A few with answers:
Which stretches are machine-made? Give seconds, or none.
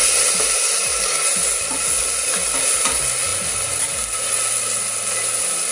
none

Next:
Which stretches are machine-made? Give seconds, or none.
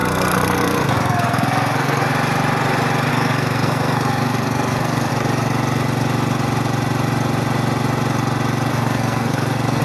0.0-2.1 (codec, SNAC); 3.1-5.1; 8.7-9.8